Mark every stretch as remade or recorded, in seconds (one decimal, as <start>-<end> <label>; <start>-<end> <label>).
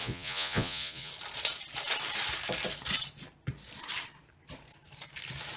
0.0-1.1 remade; 1.1-5.6 recorded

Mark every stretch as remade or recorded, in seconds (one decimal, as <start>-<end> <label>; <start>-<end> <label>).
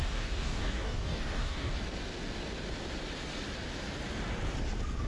0.0-1.7 remade; 1.7-5.1 recorded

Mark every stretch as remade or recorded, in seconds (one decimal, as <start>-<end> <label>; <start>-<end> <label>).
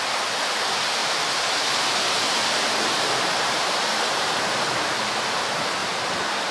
0.0-1.0 recorded; 1.0-4.6 remade; 4.6-5.8 recorded; 5.8-6.5 remade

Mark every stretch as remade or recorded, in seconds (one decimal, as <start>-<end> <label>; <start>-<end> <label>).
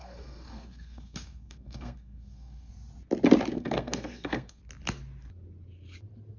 0.0-2.7 remade; 2.7-3.5 recorded; 3.5-4.6 remade; 4.6-6.4 recorded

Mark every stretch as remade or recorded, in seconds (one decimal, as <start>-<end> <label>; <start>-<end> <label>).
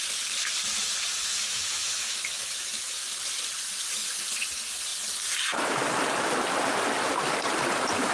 0.0-1.2 recorded; 1.2-2.9 remade; 2.9-8.1 recorded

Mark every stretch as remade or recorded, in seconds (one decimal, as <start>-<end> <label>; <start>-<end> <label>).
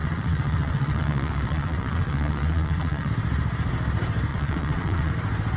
0.0-3.1 remade; 3.1-4.3 recorded; 4.3-5.1 remade; 5.1-5.6 recorded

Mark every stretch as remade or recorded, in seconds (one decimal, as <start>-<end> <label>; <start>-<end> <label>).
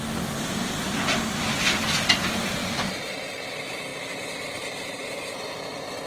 0.0-3.9 recorded; 3.9-5.1 remade; 5.1-6.1 recorded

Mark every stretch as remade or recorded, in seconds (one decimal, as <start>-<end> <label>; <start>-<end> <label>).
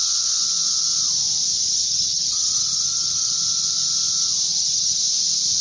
0.0-1.6 recorded; 1.6-3.3 remade; 3.3-4.5 recorded; 4.5-5.0 remade; 5.0-5.6 recorded